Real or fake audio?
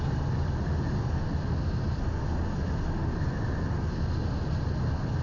real